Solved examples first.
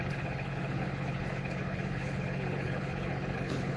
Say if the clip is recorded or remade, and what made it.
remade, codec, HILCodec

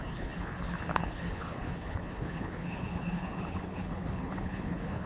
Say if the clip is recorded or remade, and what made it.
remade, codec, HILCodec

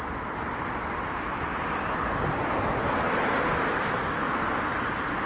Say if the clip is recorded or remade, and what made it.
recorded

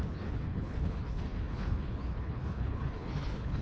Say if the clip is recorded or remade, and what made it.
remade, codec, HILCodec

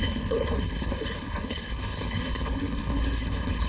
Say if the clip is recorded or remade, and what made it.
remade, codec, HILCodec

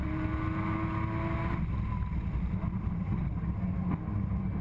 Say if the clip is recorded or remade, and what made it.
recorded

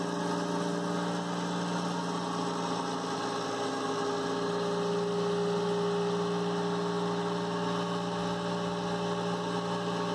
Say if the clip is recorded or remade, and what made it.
recorded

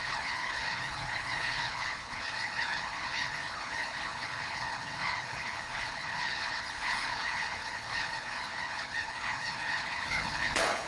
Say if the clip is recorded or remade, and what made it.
remade, codec, HILCodec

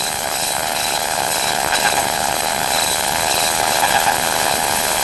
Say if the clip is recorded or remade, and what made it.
remade, codec, HILCodec